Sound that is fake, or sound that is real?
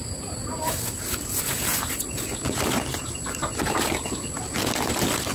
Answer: real